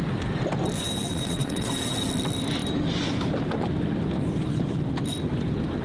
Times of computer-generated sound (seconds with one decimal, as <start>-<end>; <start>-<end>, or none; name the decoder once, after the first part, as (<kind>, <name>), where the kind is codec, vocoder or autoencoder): 1.1-1.7 (vocoder, WaveNeXt)